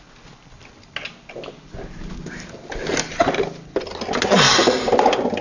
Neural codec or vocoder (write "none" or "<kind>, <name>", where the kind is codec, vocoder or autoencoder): none